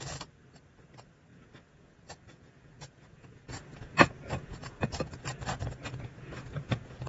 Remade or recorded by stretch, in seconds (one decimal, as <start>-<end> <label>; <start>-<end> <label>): 0.0-1.3 recorded; 1.3-5.2 remade; 5.2-5.8 recorded; 5.8-7.1 remade